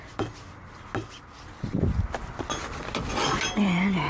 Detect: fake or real real